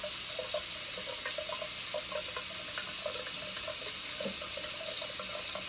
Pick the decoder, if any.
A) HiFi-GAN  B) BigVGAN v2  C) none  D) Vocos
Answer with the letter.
C